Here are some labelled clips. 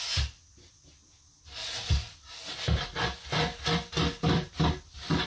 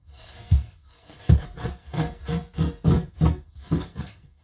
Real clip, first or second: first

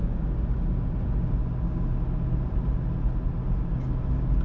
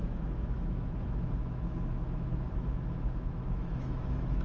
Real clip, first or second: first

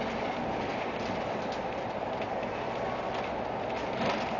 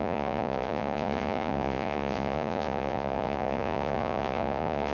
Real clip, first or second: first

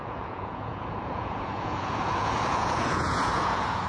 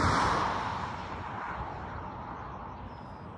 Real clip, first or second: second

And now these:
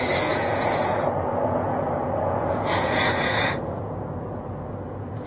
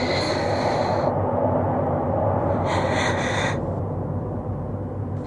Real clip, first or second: second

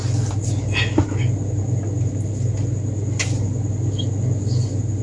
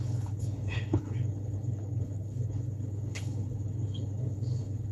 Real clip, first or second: first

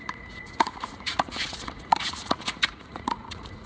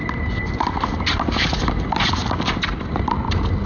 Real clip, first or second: second